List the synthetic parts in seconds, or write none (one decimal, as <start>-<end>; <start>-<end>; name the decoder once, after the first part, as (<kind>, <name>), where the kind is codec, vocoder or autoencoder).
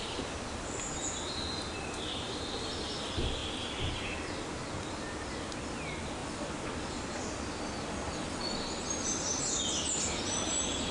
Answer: none